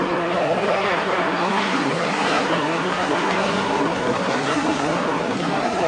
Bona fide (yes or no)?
no